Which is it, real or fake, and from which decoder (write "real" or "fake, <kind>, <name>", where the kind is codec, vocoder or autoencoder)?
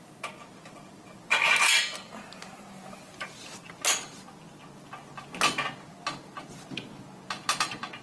real